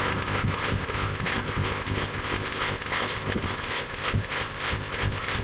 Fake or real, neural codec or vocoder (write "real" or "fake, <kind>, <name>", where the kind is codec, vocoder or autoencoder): fake, codec, ZipCodec